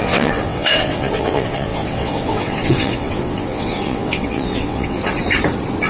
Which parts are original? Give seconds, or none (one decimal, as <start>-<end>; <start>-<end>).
5.0-5.9